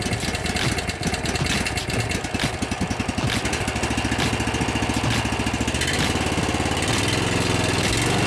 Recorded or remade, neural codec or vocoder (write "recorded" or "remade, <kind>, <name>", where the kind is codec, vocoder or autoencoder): recorded